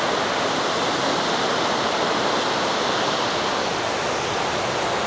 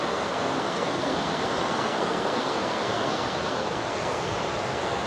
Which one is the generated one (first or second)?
second